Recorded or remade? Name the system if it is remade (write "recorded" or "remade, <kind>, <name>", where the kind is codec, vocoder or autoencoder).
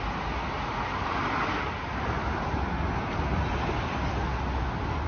recorded